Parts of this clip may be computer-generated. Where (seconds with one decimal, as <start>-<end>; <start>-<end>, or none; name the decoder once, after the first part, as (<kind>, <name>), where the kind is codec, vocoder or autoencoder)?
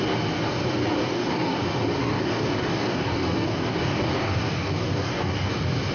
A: 1.0-1.6 (codec, DAC); 2.0-5.5